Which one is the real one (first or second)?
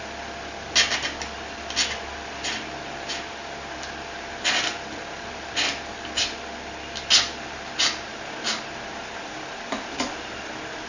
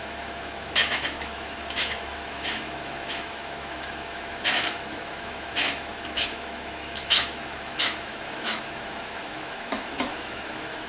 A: first